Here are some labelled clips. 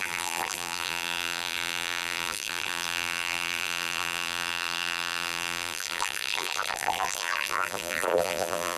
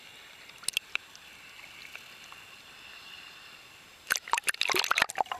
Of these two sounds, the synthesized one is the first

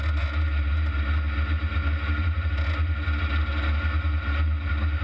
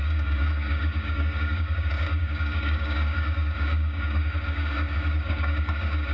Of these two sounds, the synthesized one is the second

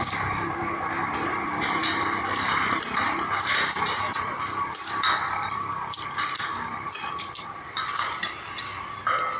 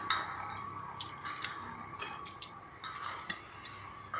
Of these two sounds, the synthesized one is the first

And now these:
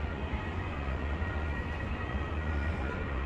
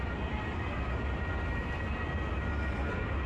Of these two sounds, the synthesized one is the first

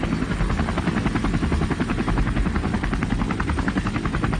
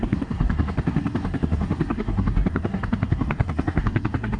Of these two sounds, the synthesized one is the second